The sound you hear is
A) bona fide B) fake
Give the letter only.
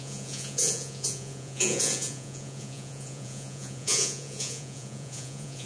B